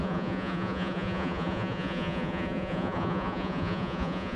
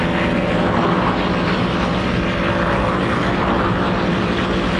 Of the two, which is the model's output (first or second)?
first